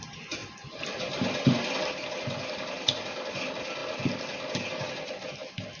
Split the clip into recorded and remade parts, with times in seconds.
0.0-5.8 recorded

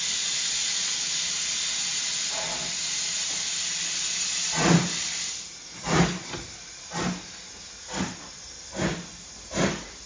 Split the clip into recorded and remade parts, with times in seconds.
0.0-10.1 recorded

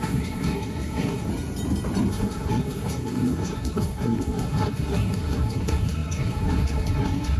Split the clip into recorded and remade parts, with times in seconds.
0.0-1.3 remade; 1.3-2.1 recorded; 2.1-7.4 remade

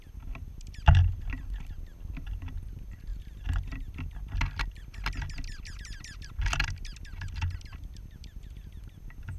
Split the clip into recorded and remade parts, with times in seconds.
0.0-9.4 recorded

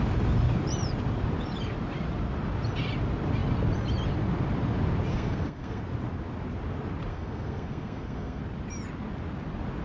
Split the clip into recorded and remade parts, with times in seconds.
0.0-5.1 recorded; 5.1-5.8 remade; 5.8-7.1 recorded; 7.1-8.4 remade; 8.4-9.8 recorded

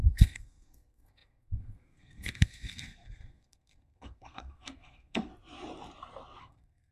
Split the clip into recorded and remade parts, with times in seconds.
0.0-5.3 remade; 5.3-6.4 recorded; 6.4-6.9 remade